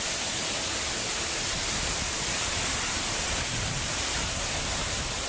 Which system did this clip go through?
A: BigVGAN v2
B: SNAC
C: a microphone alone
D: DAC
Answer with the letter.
A